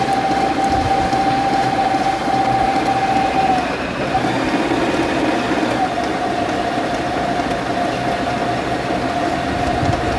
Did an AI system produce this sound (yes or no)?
no